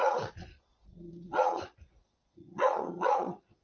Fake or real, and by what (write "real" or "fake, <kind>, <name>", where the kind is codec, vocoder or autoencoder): fake, vocoder, Vocos